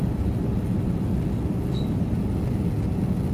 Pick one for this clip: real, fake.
real